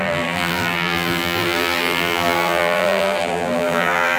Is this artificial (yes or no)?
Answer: yes